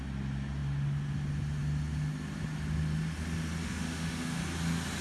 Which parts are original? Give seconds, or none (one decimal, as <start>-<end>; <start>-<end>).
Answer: 0.0-3.6; 4.4-5.0